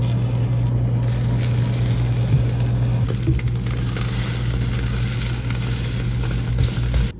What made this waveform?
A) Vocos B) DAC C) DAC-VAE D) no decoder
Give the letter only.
D